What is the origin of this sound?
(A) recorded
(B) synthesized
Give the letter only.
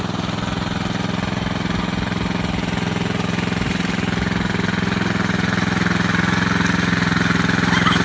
A